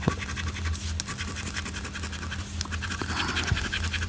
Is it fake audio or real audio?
real